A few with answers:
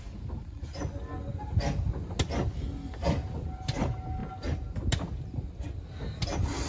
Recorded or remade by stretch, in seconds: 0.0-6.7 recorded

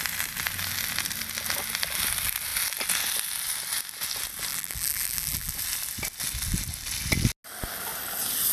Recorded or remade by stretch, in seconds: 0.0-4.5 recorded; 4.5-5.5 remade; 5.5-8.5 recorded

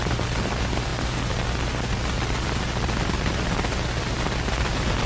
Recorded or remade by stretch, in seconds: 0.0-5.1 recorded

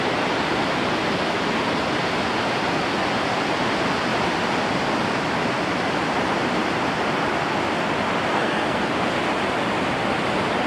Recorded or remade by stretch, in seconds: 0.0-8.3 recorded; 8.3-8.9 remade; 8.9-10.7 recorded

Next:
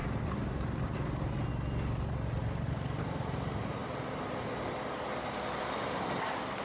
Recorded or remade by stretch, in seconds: 0.0-2.4 recorded; 2.4-3.0 remade; 3.0-6.6 recorded

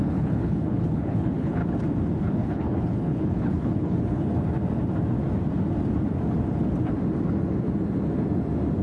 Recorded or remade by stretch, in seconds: 0.0-1.6 remade; 1.6-2.2 recorded; 2.2-4.3 remade; 4.3-8.8 recorded

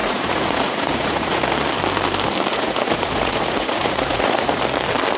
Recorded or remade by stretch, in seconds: 0.0-1.4 remade; 1.4-2.5 recorded; 2.5-4.6 remade; 4.6-5.2 recorded